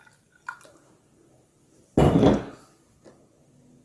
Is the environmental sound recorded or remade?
recorded